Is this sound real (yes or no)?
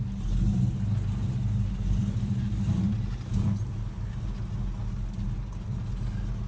yes